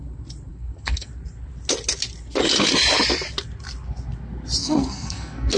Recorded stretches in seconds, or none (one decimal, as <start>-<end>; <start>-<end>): 0.0-0.5; 1.1-4.6